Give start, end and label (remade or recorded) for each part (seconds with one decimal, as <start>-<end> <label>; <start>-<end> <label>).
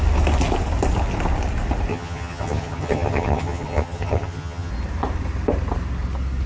0.0-1.9 recorded; 1.9-4.7 remade; 4.7-6.5 recorded